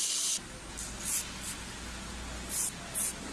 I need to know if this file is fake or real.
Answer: real